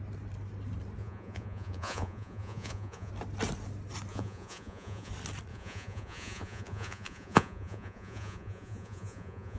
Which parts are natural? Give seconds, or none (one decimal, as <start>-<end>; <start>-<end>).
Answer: 0.0-1.0; 3.1-4.1; 5.1-5.5